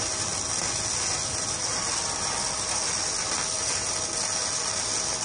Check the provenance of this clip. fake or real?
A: real